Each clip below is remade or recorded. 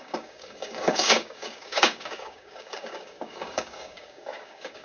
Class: remade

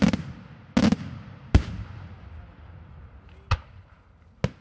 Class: recorded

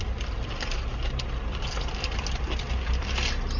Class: recorded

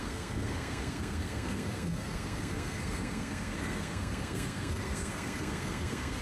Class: remade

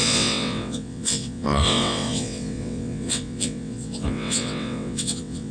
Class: remade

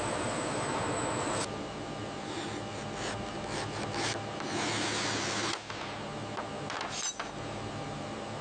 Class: recorded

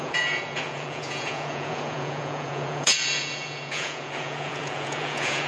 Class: remade